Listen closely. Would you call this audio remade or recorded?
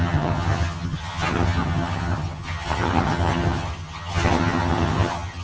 remade